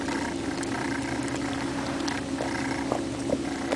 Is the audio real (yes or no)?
yes